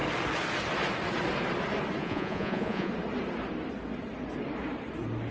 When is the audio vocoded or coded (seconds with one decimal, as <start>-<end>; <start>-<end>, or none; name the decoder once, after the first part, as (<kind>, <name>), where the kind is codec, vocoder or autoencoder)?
2.0-2.9 (vocoder, Vocos)